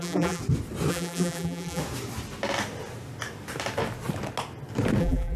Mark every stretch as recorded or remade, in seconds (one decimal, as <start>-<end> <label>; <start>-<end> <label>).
0.0-0.4 remade; 0.4-0.9 recorded; 0.9-1.8 remade; 1.8-5.0 recorded; 5.0-5.4 remade